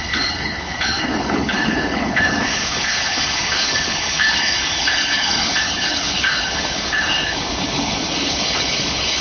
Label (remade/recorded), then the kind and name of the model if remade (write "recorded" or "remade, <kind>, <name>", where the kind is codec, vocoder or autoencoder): remade, codec, HILCodec